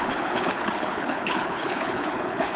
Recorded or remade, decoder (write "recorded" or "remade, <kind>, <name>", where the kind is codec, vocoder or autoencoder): remade, codec, HILCodec